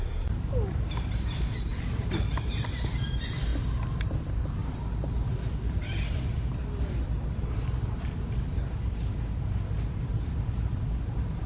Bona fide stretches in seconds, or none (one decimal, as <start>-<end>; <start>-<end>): 3.5-4.0